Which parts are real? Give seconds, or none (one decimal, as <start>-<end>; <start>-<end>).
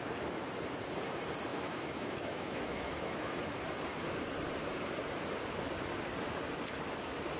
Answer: 0.0-1.5; 3.4-7.4